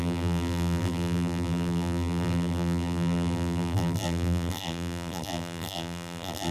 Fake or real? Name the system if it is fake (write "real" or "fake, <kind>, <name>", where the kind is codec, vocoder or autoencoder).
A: fake, vocoder, BigVGAN v2